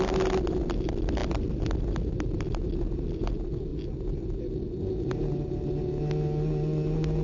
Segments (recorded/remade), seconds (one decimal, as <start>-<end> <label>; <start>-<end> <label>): 0.0-1.2 recorded; 1.2-3.3 remade; 3.3-7.2 recorded